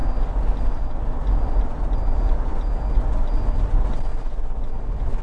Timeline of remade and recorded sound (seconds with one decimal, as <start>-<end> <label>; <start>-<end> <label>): 0.0-5.2 recorded